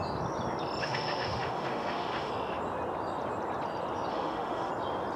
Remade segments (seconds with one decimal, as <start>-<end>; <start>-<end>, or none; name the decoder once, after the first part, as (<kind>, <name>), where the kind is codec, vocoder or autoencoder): 0.8-2.3 (autoencoder, DAC-VAE); 4.1-4.7